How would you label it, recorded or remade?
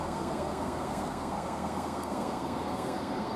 remade